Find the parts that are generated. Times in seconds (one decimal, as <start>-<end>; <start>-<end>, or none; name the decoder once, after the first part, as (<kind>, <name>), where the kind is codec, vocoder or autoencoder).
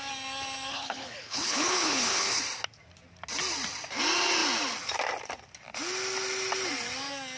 0.7-2.4 (codec, HILCodec)